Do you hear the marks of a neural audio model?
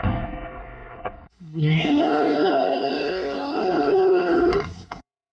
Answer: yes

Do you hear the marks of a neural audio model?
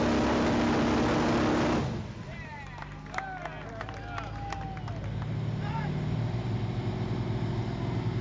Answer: no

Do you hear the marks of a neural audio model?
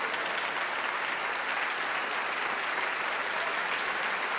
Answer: no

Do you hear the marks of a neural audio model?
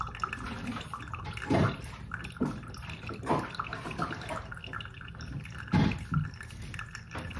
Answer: no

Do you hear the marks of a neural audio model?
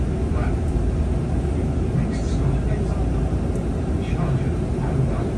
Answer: no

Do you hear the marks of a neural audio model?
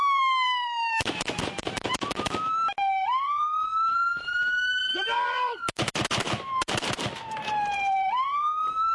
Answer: yes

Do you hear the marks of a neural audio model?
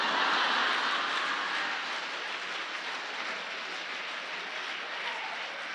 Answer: no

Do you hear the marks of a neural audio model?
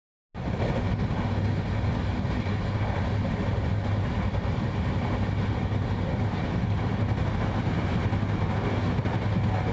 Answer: no